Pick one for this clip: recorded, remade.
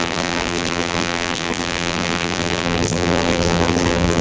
remade